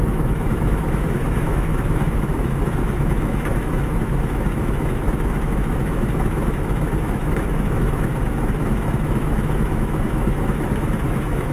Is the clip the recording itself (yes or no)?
no